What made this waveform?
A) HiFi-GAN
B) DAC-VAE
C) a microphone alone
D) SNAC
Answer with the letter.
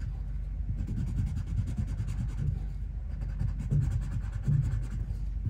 C